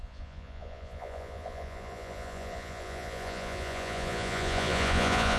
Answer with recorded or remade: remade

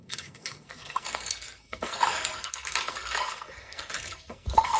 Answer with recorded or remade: remade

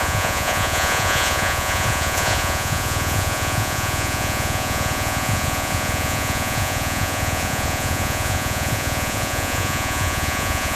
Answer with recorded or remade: remade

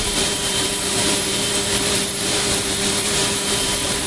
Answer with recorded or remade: remade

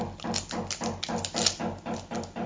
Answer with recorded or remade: recorded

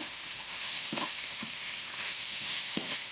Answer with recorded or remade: remade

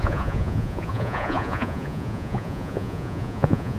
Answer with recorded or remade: remade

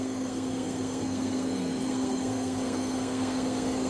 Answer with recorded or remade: remade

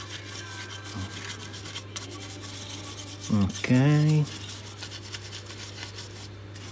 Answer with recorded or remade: recorded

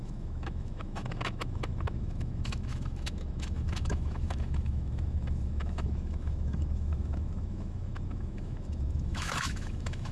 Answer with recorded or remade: remade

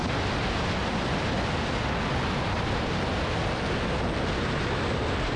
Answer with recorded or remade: recorded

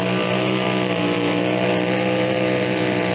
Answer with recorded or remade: remade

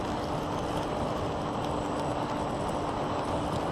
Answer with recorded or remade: recorded